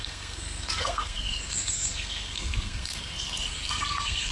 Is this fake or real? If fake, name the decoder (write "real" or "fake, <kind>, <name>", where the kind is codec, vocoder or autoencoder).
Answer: fake, codec, SNAC